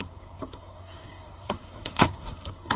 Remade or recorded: remade